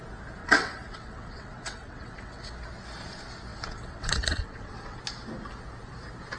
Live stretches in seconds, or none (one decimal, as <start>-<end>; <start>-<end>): 0.0-0.4; 2.5-3.5; 5.0-6.4